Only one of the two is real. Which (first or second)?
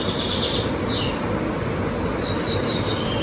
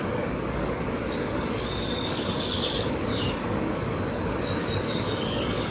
first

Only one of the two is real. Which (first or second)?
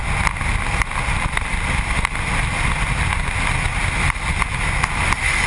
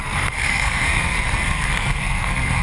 first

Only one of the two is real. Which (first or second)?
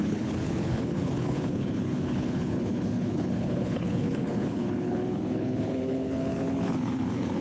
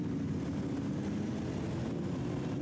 second